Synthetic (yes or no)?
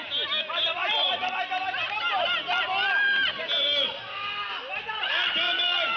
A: no